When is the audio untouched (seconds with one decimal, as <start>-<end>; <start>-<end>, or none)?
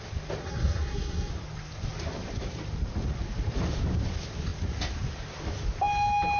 0.0-0.4; 1.3-6.4